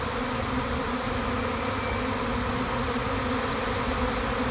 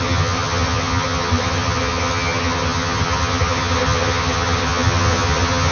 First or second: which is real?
first